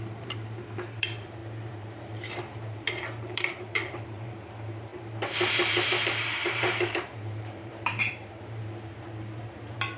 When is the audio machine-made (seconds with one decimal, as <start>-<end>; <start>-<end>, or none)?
0.0-10.0